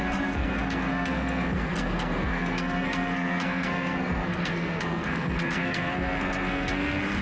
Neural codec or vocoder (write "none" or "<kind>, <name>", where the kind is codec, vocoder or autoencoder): codec, SNAC